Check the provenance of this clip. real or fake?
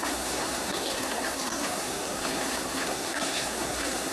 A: fake